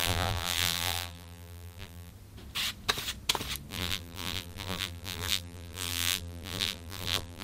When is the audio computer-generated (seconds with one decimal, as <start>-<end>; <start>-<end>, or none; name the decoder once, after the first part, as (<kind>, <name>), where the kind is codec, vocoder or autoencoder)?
0.0-2.1 (vocoder, BigVGAN v2); 3.7-7.4